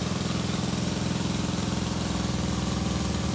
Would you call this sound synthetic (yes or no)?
no